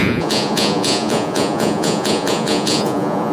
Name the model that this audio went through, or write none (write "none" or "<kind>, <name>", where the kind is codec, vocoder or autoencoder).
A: vocoder, Vocos